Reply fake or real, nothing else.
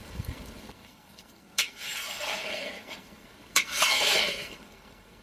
fake